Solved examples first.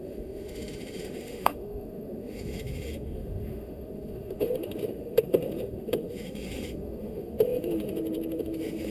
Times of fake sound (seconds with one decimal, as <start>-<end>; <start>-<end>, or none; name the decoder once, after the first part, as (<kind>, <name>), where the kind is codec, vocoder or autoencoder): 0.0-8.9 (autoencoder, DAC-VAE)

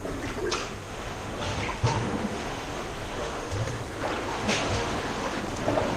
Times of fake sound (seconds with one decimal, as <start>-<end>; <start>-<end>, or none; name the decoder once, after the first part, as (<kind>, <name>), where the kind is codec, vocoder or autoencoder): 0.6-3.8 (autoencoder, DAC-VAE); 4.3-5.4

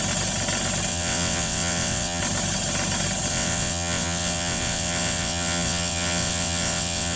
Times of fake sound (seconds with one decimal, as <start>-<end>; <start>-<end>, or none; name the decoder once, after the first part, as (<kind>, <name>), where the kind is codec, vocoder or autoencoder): 0.9-2.2 (vocoder, WaveNeXt); 3.3-7.2

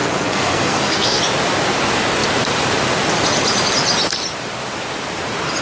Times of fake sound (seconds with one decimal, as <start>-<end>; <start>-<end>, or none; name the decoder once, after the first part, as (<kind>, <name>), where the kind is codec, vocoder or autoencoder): 0.0-1.2 (codec, SNAC)

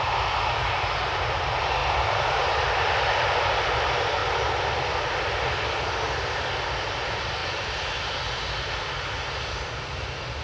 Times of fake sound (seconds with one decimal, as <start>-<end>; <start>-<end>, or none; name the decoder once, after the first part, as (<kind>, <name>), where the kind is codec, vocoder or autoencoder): none

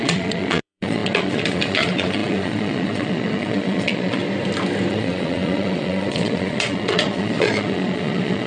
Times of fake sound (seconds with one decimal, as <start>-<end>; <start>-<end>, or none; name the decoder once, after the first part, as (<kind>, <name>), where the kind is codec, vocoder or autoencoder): 0.0-4.2 (vocoder, Vocos); 4.9-8.5

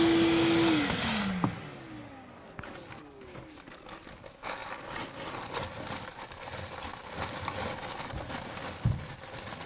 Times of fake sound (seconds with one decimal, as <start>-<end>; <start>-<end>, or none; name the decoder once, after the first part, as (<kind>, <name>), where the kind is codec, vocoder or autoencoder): none

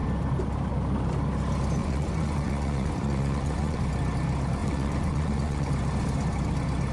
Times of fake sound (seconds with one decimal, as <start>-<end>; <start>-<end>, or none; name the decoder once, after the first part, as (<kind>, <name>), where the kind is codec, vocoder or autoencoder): 1.8-3.8 (vocoder, Vocos); 4.6-5.7